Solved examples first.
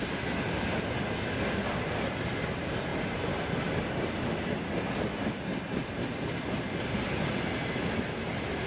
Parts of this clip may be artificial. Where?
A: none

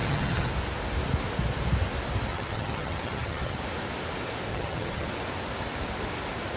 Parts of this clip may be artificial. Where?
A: 0.0-0.5 (vocoder, HiFi-GAN); 2.3-3.6; 4.5-5.1

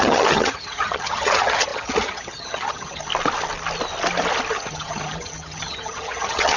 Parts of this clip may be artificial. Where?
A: 0.0-3.1 (vocoder, HiFi-GAN); 4.5-6.6